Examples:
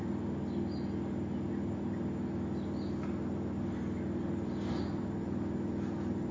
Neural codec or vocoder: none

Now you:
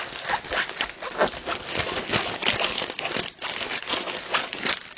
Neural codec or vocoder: none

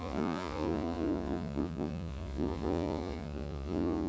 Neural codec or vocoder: vocoder, Vocos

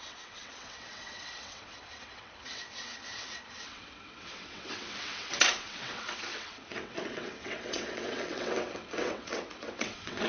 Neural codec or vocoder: vocoder, WaveNeXt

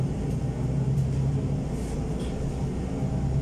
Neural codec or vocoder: none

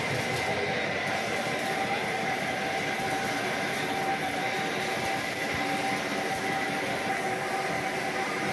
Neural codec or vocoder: none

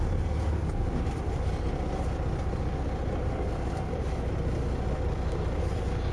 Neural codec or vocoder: none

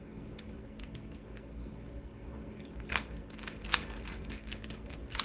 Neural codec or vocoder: codec, SNAC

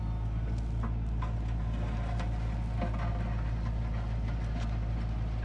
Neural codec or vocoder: none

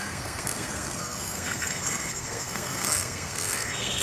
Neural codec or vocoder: codec, SNAC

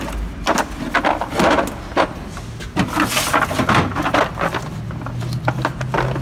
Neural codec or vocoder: none